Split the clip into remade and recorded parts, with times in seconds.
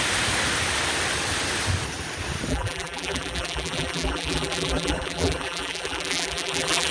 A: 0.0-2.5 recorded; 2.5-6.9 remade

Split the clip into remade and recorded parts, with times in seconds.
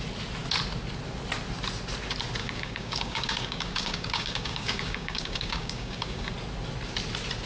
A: 0.0-2.4 recorded; 2.4-6.3 remade; 6.3-7.5 recorded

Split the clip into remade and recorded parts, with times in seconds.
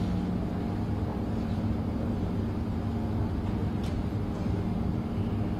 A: 0.0-1.1 recorded; 1.1-2.4 remade; 2.4-3.6 recorded; 3.6-4.2 remade; 4.2-5.6 recorded